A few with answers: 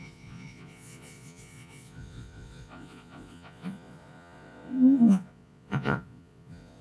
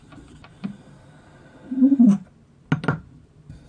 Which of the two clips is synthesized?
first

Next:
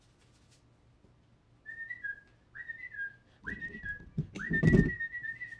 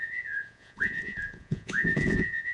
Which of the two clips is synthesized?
second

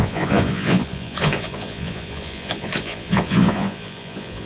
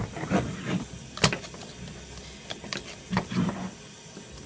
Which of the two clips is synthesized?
first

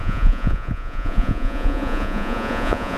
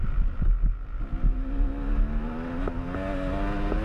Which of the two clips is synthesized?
first